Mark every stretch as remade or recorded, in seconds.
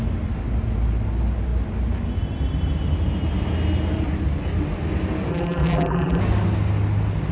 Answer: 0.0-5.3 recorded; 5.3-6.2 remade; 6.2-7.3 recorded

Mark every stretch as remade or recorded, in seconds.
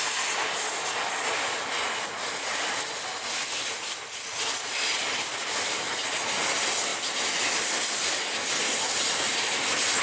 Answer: 0.0-10.0 recorded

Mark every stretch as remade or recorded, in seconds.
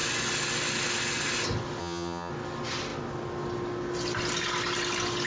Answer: 0.0-1.8 recorded; 1.8-2.3 remade; 2.3-5.3 recorded